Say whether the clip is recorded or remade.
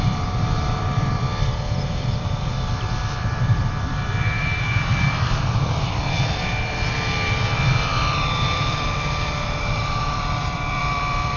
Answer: remade